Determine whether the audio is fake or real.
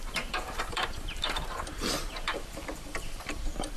fake